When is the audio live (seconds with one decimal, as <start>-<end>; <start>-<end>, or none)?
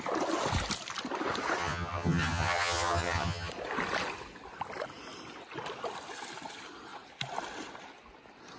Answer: 0.0-1.6; 3.5-8.6